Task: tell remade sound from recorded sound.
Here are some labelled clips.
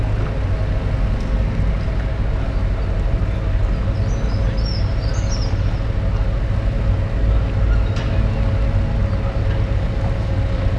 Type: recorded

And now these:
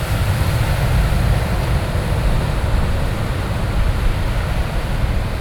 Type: recorded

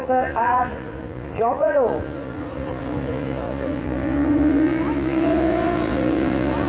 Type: remade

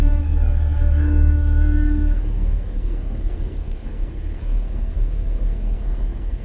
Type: remade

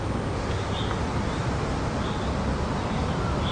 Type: recorded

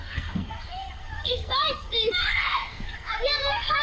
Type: remade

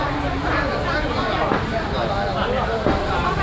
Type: recorded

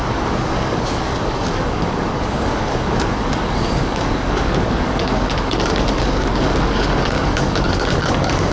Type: remade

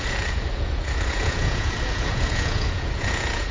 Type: remade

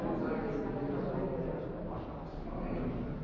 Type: recorded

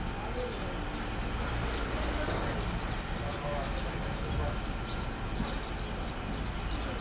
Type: recorded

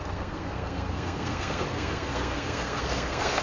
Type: remade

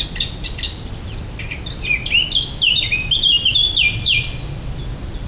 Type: recorded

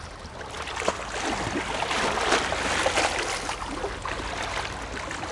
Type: recorded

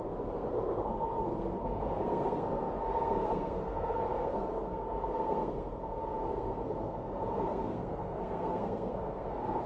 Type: remade